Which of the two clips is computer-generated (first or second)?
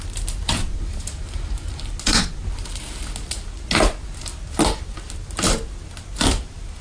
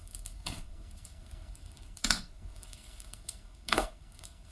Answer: second